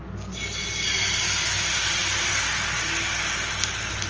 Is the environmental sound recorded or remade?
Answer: recorded